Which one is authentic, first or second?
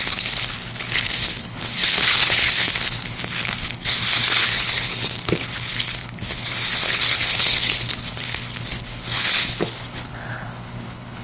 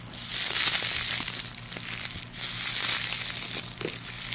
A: second